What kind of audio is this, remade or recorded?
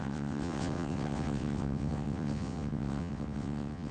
remade